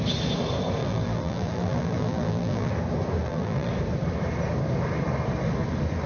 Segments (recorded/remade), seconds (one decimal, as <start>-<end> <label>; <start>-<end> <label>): 0.0-0.8 recorded; 0.8-2.7 remade; 2.7-3.2 recorded; 3.2-3.7 remade; 3.7-6.1 recorded

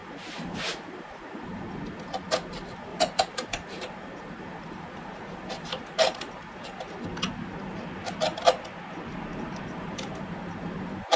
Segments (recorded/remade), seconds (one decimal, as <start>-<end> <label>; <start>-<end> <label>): 0.0-1.6 remade; 1.6-2.9 recorded; 2.9-6.9 remade; 6.9-9.3 recorded; 9.3-11.2 remade

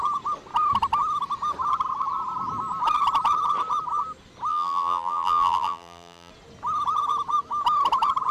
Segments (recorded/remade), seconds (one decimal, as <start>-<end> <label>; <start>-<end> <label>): 0.0-4.5 recorded; 4.5-6.3 remade; 6.3-8.3 recorded